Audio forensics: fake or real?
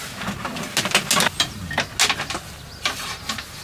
real